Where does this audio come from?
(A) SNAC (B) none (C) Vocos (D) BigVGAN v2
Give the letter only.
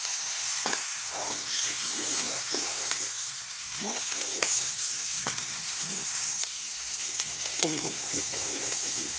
A